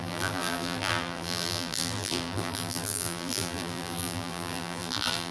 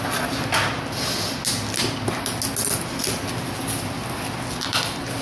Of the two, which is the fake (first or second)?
first